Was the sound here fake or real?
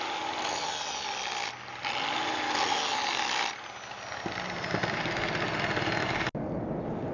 real